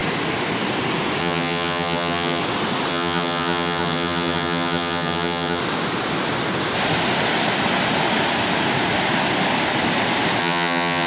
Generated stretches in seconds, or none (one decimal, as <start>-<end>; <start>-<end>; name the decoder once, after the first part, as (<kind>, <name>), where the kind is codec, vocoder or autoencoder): 1.2-2.4 (vocoder, HiFi-GAN); 2.9-5.6; 10.4-11.1